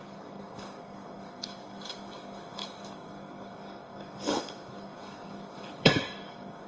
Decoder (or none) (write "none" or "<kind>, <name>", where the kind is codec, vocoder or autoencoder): codec, DAC